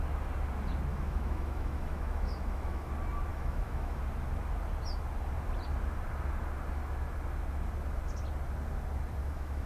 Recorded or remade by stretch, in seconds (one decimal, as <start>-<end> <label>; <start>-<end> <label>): 0.0-0.9 recorded; 0.9-2.9 remade; 2.9-3.3 recorded; 3.3-4.0 remade; 4.0-9.2 recorded; 9.2-9.7 remade